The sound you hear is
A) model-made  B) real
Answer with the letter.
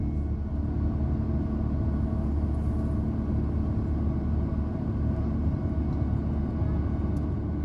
B